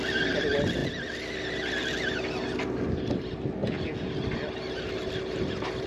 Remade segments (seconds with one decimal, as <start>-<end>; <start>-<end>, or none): 3.6-4.1